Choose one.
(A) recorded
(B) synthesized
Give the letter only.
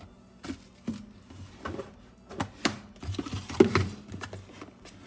A